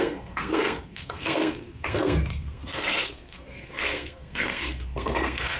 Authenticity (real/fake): fake